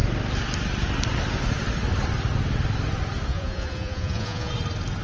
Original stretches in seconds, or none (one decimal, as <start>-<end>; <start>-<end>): 0.0-3.3; 4.5-5.0